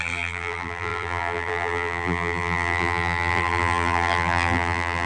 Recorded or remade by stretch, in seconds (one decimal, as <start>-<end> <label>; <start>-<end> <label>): 0.0-5.1 remade